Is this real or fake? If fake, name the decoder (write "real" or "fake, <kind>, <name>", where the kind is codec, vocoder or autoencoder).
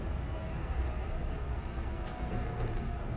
fake, codec, SNAC